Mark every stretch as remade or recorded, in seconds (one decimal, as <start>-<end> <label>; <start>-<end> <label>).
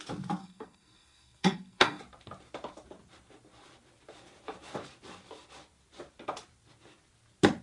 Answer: 0.0-0.4 recorded; 0.4-2.0 remade; 2.0-7.6 recorded